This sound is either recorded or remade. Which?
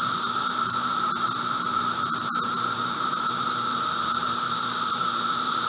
remade